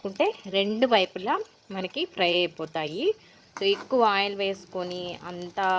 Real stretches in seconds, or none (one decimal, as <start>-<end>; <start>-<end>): 3.5-5.8